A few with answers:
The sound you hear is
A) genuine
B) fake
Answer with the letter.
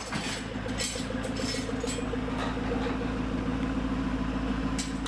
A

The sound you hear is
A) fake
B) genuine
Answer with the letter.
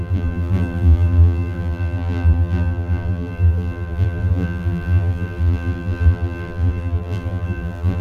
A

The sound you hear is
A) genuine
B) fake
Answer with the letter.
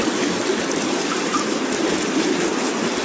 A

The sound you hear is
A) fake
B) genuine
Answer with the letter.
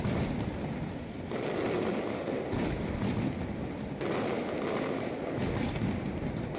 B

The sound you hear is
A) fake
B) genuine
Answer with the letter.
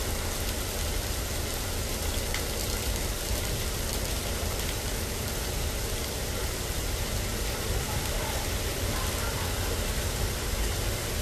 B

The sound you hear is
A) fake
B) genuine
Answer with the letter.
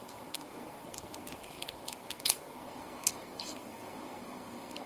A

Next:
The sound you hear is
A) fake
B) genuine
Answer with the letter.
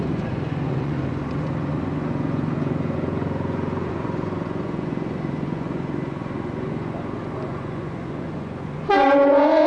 A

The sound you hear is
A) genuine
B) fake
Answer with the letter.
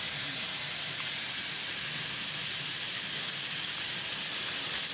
A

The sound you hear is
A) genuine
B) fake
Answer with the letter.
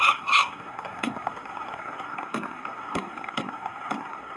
B